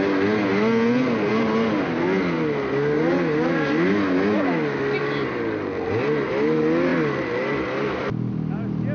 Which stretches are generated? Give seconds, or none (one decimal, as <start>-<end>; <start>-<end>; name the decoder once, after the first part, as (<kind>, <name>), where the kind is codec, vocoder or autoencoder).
none